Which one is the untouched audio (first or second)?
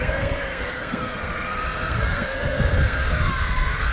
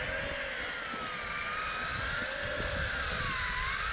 second